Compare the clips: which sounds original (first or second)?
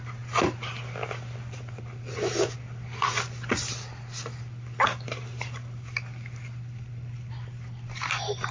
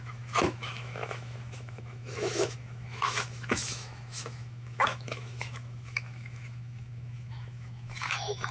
first